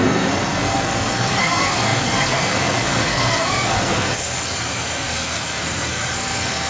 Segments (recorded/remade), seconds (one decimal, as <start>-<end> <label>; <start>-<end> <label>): 0.0-6.7 remade